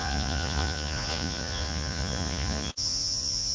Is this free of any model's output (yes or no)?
no